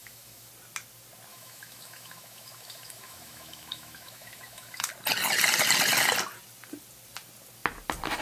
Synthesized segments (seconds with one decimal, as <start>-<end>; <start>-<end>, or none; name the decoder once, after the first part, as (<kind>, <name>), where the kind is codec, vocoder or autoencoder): 0.0-0.5 (autoencoder, DAC-VAE); 1.3-4.9